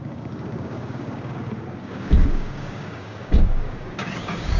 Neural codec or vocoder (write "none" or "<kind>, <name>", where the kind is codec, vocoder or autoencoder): codec, DAC